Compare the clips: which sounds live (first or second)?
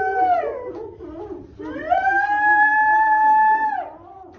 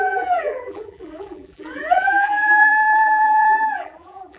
first